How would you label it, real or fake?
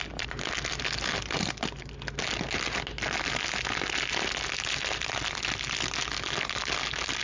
real